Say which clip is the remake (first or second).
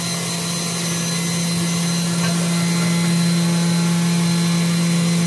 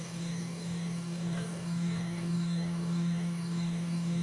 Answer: second